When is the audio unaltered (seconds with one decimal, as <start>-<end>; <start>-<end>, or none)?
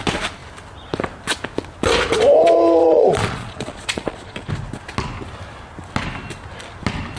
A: 0.0-2.8; 4.5-7.2